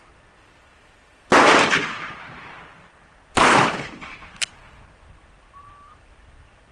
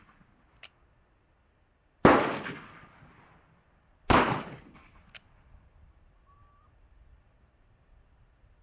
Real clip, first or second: second